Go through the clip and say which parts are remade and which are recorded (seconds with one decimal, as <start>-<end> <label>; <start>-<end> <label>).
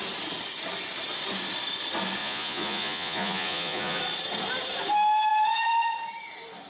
0.0-2.2 recorded; 2.2-4.0 remade; 4.0-6.7 recorded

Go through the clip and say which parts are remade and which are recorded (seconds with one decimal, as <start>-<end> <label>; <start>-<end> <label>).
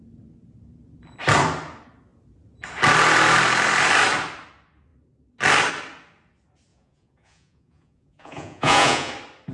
0.0-6.7 recorded; 6.7-9.1 remade; 9.1-9.5 recorded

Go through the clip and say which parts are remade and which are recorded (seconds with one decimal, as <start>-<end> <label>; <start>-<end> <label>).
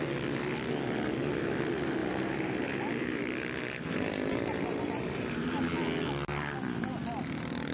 0.0-2.0 recorded; 2.0-5.4 remade; 5.4-7.7 recorded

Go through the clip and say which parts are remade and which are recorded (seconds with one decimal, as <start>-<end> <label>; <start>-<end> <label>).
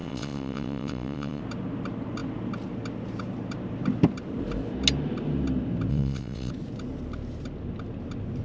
0.0-1.4 remade; 1.4-5.9 recorded; 5.9-6.5 remade; 6.5-8.4 recorded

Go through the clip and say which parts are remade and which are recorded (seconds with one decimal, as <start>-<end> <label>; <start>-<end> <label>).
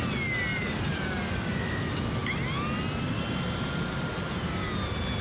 0.0-0.5 recorded; 0.5-1.2 remade; 1.2-5.2 recorded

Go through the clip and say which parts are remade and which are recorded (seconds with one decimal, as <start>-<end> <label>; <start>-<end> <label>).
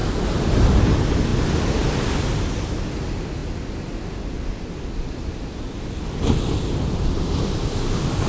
0.0-8.3 recorded